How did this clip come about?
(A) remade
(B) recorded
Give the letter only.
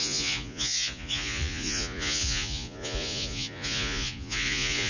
A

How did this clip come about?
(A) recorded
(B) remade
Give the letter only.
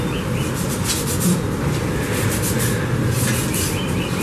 A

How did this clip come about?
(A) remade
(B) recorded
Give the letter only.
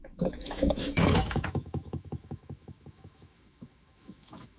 A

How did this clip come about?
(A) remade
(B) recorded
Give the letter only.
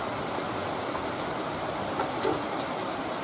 B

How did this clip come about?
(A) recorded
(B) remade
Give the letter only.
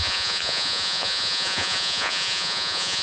B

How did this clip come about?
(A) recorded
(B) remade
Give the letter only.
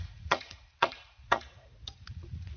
B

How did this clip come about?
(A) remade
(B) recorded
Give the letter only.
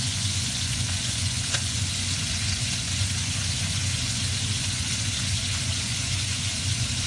A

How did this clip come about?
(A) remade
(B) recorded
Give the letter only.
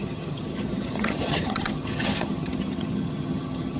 A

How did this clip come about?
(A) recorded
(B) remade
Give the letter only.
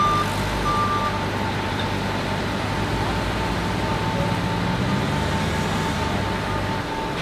A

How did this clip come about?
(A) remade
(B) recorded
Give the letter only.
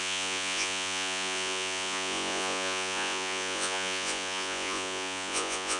A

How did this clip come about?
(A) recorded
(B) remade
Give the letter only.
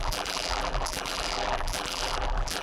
B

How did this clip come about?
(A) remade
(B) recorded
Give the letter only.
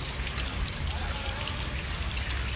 B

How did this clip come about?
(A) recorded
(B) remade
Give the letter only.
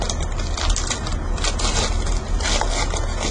A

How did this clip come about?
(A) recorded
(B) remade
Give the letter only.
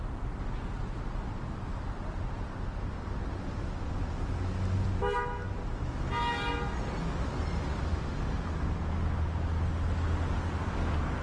A